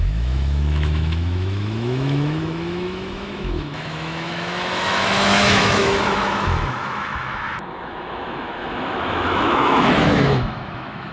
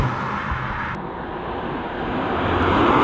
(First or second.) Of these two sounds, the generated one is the first